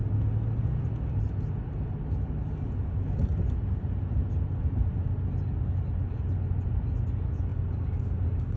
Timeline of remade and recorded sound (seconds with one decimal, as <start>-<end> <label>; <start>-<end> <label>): 0.0-8.6 recorded

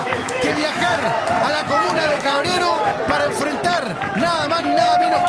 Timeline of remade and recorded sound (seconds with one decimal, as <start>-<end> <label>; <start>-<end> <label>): 0.0-1.0 remade; 1.0-1.5 recorded; 1.5-2.9 remade; 2.9-4.6 recorded; 4.6-5.3 remade